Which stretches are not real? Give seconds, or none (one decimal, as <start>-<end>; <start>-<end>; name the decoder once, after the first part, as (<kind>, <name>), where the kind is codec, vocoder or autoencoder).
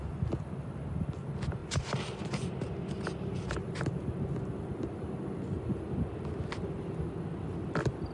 none